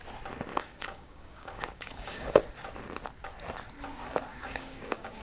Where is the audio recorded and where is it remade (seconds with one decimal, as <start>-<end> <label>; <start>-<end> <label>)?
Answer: 0.0-0.5 recorded; 0.5-2.3 remade; 2.3-4.3 recorded; 4.3-5.2 remade